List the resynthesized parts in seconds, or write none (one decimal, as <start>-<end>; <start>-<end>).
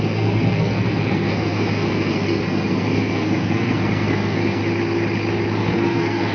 0.0-4.6; 5.6-6.3